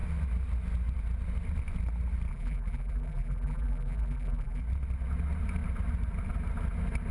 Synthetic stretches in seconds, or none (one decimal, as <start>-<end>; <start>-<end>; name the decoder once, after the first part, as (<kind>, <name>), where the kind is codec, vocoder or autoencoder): 2.3-4.6 (vocoder, BigVGAN v2)